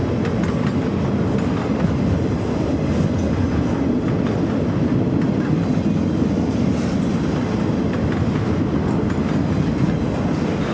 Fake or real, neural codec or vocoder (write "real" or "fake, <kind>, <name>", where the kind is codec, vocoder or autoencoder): real